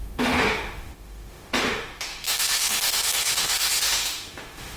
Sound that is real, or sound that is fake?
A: fake